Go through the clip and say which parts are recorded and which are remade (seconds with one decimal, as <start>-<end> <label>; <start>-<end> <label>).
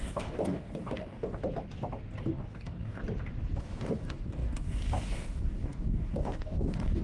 0.0-1.4 remade; 1.4-2.3 recorded; 2.3-3.0 remade; 3.0-3.6 recorded; 3.6-7.0 remade